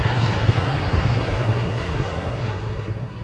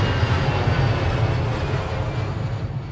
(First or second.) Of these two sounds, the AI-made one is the first